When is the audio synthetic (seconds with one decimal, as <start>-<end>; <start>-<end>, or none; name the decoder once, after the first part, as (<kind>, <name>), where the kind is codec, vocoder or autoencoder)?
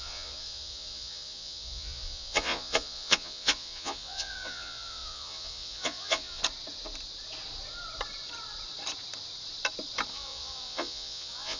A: 0.0-6.4 (vocoder, Vocos); 10.1-11.6